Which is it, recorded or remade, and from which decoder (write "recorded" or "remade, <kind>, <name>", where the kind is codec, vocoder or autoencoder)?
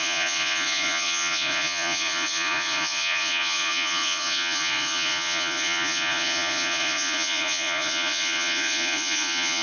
remade, vocoder, Vocos